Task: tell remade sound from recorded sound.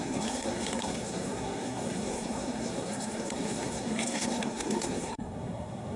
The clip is remade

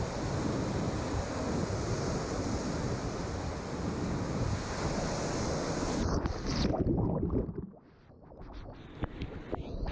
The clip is recorded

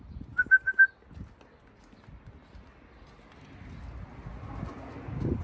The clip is recorded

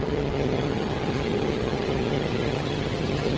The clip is remade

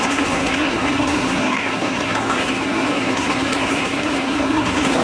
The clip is remade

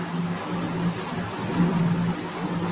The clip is recorded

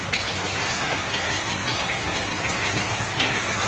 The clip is remade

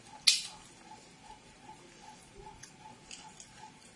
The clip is recorded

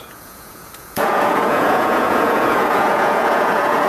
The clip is remade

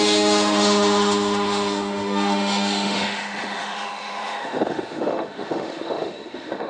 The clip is remade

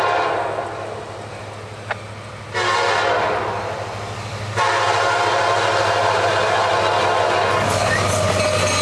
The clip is recorded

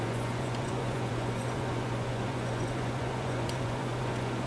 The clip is remade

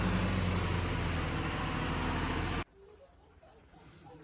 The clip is recorded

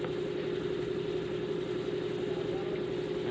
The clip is recorded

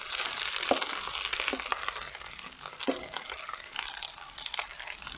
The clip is recorded